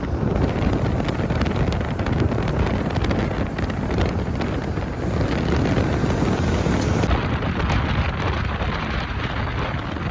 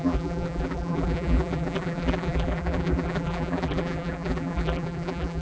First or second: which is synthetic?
second